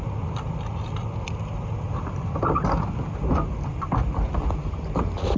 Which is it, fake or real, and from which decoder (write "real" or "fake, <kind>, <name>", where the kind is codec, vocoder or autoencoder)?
real